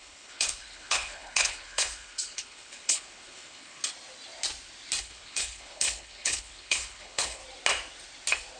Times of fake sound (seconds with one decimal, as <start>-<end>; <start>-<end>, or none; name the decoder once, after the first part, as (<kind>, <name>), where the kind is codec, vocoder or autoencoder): 0.0-3.8 (codec, HILCodec); 5.0-7.4